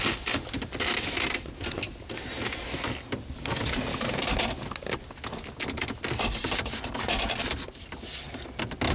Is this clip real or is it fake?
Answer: real